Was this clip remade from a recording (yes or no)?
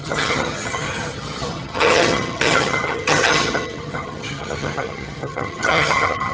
yes